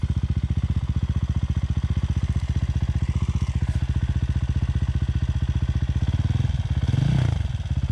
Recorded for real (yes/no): yes